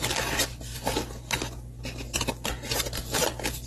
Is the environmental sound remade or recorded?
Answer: recorded